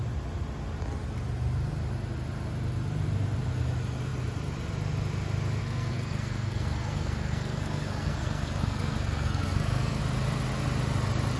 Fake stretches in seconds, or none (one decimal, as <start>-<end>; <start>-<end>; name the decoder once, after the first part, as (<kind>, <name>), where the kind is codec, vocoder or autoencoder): 5.6-10.0 (codec, SNAC)